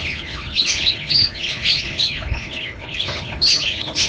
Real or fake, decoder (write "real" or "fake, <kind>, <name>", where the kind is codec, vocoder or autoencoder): fake, codec, HILCodec